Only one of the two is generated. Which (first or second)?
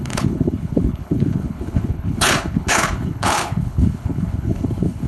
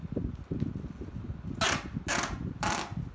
first